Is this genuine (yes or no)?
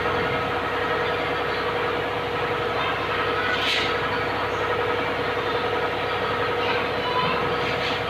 yes